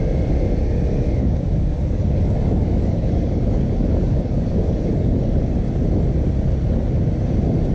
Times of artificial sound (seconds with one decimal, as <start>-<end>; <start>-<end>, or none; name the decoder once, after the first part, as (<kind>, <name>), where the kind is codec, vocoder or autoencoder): 1.2-5.5 (codec, DAC)